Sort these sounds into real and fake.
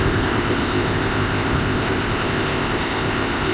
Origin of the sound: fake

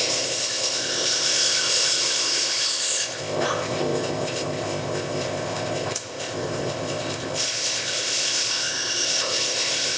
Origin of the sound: fake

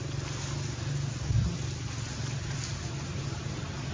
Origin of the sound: real